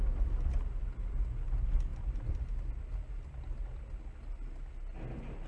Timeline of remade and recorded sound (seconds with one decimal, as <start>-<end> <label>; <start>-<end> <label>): 0.0-5.5 recorded